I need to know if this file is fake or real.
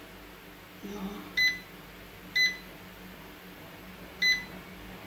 real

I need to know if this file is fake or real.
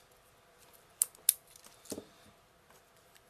real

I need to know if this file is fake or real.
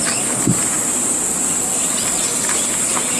real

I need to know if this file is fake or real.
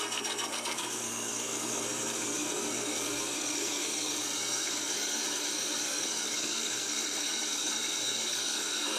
fake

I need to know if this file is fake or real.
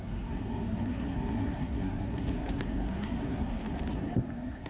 fake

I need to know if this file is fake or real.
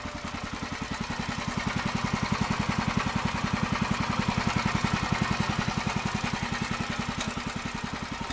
real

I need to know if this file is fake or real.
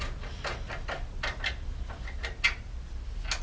real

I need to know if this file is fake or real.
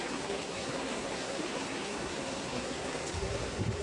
fake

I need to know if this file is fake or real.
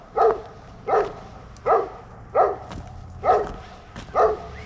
real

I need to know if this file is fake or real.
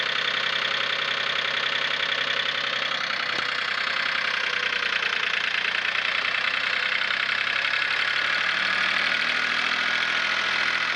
real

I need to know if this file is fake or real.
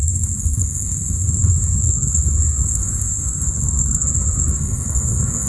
fake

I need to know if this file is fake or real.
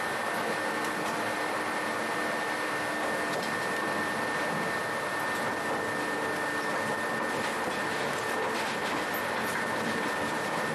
real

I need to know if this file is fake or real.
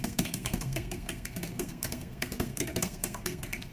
fake